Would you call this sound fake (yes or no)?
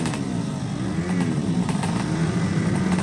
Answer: no